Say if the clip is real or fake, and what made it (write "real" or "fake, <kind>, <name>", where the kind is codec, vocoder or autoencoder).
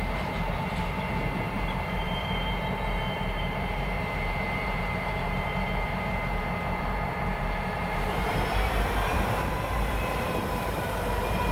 fake, vocoder, BigVGAN v2